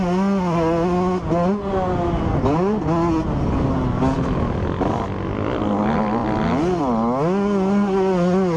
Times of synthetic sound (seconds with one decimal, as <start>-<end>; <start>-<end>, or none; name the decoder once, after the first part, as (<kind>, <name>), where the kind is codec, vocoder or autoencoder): none